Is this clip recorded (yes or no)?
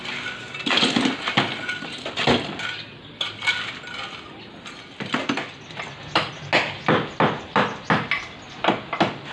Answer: yes